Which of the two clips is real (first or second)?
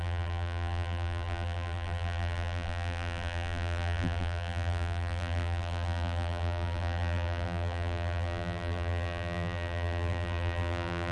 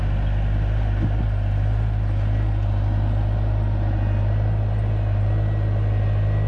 second